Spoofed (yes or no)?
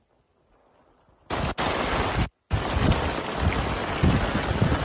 no